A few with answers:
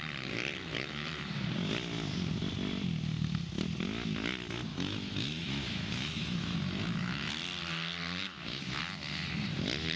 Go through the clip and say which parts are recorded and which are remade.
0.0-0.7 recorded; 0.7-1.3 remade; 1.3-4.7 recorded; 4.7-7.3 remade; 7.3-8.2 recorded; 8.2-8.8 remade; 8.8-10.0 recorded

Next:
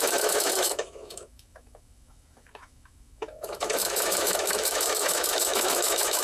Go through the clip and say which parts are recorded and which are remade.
0.0-6.2 remade

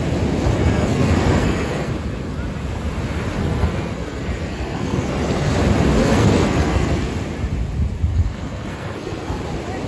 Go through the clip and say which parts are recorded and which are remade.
0.0-0.6 recorded; 0.6-1.9 remade; 1.9-3.4 recorded; 3.4-5.5 remade; 5.5-6.0 recorded; 6.0-7.1 remade; 7.1-8.1 recorded; 8.1-9.4 remade; 9.4-9.9 recorded

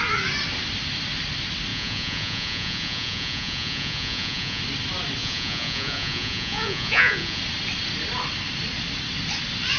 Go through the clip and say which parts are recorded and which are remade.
0.0-1.7 recorded; 1.7-4.6 remade; 4.6-5.2 recorded; 5.2-7.4 remade; 7.4-9.8 recorded

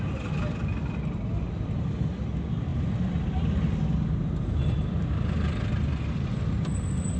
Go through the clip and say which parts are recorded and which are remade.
0.0-7.2 recorded

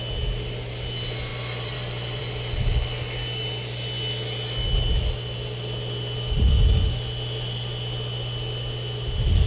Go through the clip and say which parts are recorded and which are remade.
0.0-1.3 recorded; 1.3-2.2 remade; 2.2-9.5 recorded